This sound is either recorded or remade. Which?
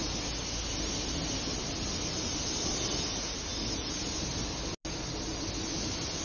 recorded